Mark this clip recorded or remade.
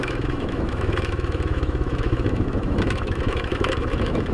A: remade